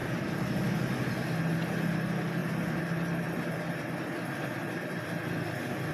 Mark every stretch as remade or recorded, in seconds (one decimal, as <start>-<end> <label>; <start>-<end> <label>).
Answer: 0.0-1.1 remade; 1.1-2.4 recorded; 2.4-5.9 remade